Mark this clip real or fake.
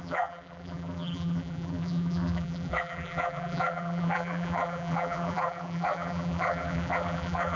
fake